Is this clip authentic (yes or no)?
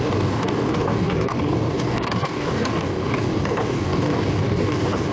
no